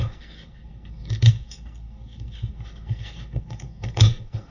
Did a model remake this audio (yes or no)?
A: yes